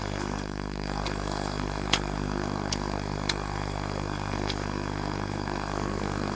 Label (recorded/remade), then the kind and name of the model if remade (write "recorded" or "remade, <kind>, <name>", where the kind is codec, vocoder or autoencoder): remade, codec, SNAC